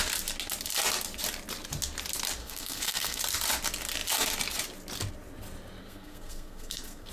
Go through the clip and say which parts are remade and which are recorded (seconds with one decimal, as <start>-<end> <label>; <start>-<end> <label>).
0.0-2.4 recorded; 2.4-3.2 remade; 3.2-5.8 recorded; 5.8-7.1 remade